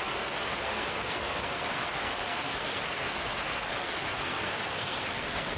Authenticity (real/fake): fake